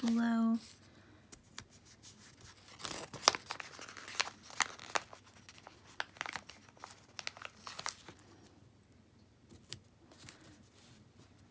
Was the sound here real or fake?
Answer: real